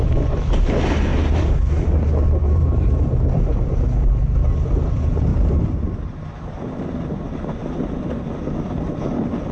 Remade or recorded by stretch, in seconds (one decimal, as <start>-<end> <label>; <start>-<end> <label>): 0.0-1.1 recorded; 1.1-1.8 remade; 1.8-2.4 recorded; 2.4-4.1 remade; 4.1-5.3 recorded; 5.3-6.8 remade; 6.8-9.5 recorded